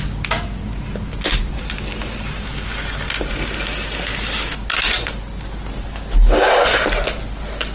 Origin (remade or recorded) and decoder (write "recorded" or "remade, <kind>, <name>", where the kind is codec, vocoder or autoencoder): recorded